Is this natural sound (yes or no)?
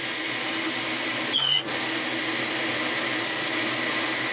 yes